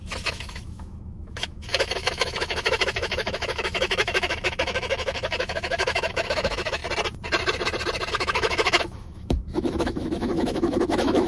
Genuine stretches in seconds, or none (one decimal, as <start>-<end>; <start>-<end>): 6.8-8.1